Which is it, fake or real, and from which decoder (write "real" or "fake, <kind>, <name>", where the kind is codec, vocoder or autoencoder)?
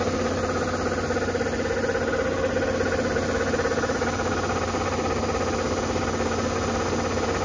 real